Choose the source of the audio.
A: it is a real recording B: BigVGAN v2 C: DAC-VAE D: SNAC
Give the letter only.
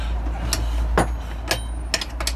A